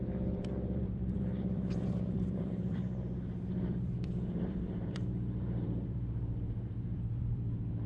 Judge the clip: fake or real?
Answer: fake